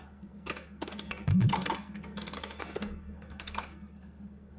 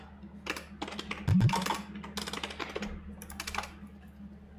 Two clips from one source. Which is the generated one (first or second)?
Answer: first